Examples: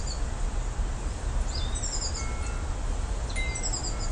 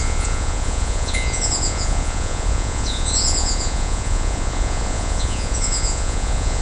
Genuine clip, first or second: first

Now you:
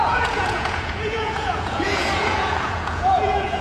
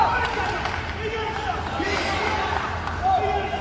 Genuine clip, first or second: second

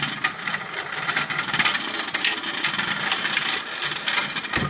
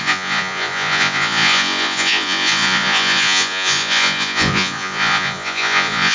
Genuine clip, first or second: first